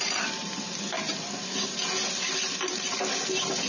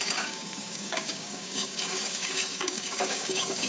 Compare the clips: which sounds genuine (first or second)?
first